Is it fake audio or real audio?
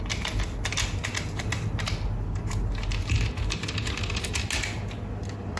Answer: real